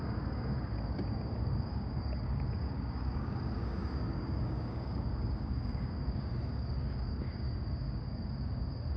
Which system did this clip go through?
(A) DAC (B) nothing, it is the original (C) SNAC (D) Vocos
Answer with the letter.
A